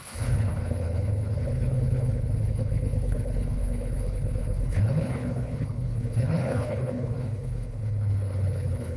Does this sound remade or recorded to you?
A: remade